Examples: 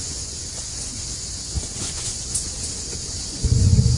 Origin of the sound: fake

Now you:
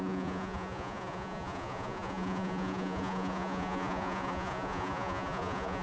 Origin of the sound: fake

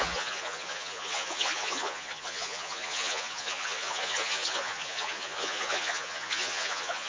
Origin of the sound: fake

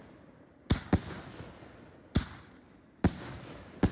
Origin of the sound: real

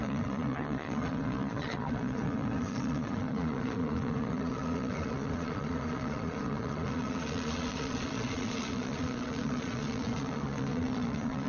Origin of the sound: fake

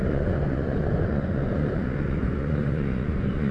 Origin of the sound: fake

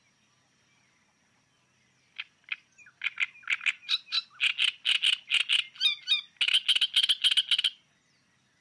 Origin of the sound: real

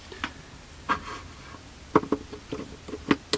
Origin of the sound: real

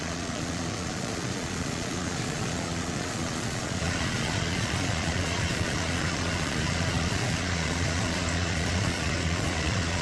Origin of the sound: fake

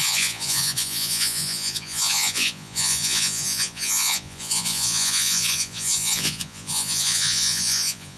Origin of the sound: fake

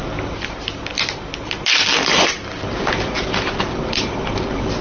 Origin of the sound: real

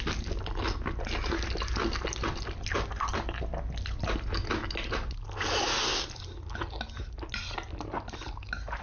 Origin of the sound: real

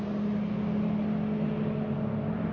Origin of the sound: real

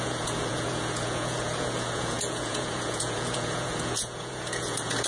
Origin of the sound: fake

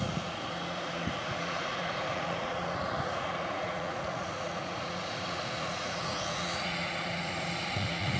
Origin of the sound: fake